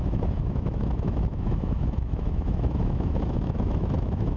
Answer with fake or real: fake